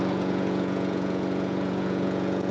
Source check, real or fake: fake